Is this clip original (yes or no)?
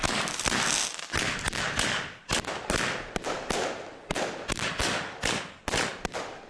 yes